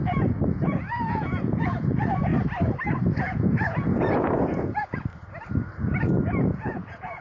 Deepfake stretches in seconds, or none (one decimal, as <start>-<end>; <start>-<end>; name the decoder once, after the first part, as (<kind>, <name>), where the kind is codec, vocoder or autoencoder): 0.0-2.3 (vocoder, Vocos); 3.2-5.1; 6.4-7.2